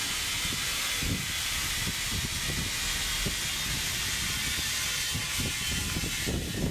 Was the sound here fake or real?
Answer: real